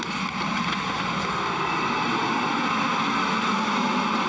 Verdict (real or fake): real